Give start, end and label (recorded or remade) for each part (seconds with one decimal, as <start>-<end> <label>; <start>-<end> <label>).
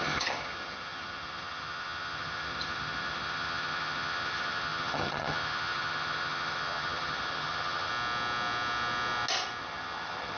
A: 0.0-7.9 remade; 7.9-9.6 recorded; 9.6-10.4 remade